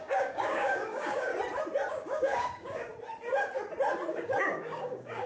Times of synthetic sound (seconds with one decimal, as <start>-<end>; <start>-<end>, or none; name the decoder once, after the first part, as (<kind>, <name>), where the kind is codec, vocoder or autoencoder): 0.0-1.3 (codec, DAC); 1.9-2.9; 4.1-5.3